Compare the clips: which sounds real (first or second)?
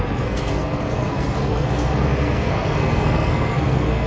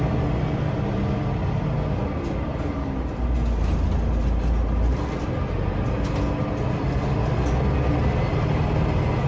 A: second